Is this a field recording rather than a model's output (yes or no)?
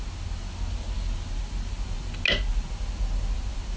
yes